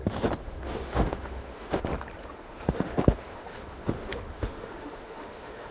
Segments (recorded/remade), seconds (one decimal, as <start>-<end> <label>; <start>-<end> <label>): 0.0-0.4 recorded; 0.4-1.8 remade; 1.8-2.2 recorded; 2.2-5.7 remade